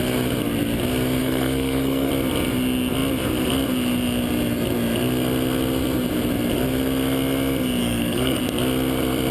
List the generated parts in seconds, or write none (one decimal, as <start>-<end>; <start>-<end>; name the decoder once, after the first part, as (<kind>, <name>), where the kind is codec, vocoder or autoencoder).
1.2-2.1 (codec, SNAC); 7.8-8.4